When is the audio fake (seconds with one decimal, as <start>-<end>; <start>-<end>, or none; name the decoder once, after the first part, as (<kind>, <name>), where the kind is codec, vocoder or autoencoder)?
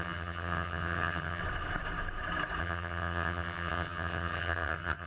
0.0-1.4 (vocoder, HiFi-GAN); 2.6-5.1